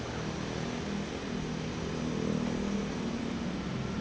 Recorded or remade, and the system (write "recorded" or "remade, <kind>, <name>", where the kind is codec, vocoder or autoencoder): recorded